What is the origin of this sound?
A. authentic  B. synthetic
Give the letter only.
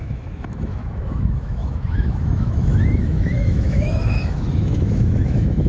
B